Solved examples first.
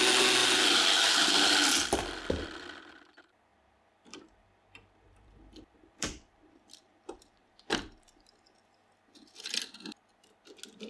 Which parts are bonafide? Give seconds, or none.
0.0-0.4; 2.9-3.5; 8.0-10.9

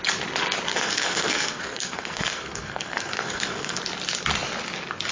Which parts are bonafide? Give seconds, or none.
0.0-0.7; 3.8-5.1

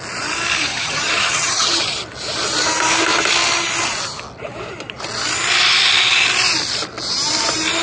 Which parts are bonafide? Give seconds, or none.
0.0-0.7; 1.8-7.8